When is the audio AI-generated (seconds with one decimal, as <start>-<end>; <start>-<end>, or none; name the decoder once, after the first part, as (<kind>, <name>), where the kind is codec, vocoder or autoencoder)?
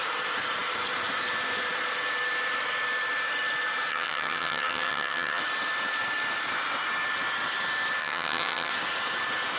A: 3.9-5.4 (vocoder, HiFi-GAN); 8.0-8.7